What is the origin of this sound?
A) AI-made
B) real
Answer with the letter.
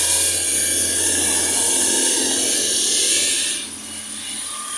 B